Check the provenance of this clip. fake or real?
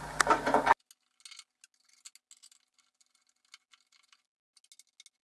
real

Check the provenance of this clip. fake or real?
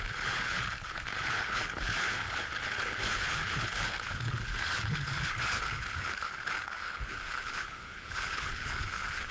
fake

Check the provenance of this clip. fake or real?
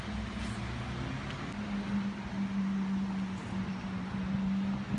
real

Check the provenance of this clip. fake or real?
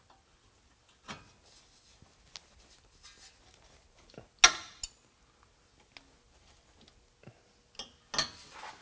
real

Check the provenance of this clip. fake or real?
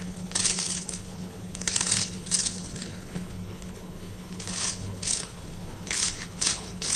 fake